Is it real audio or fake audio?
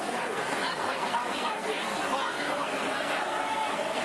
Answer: fake